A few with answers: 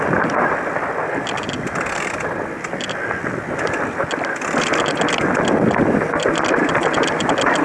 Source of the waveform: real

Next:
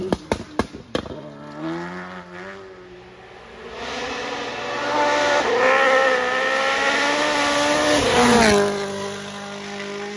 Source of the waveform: real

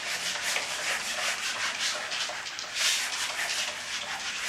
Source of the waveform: real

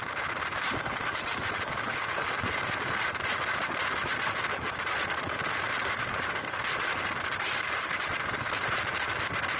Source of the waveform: real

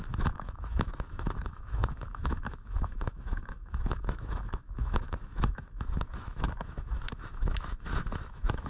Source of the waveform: fake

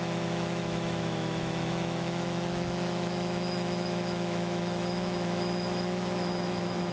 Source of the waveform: fake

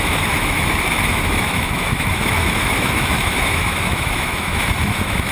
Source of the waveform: fake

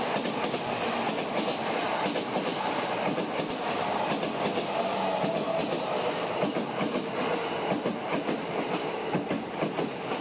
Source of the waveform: real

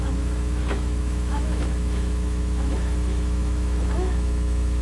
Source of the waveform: fake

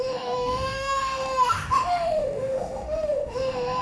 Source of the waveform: fake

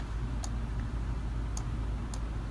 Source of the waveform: real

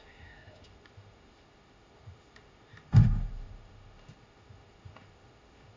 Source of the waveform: fake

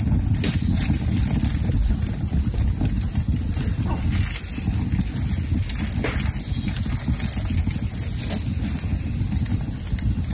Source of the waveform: real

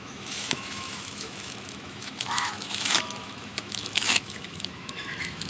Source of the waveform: fake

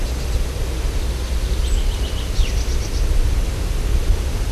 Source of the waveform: real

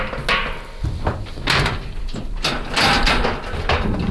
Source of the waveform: real